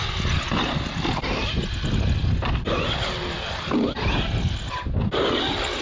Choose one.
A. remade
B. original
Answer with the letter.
B